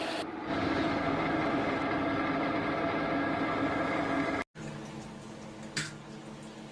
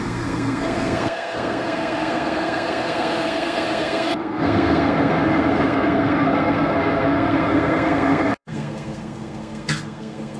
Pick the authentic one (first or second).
first